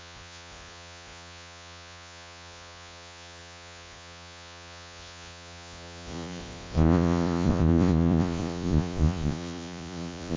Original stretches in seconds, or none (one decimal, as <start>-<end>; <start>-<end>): none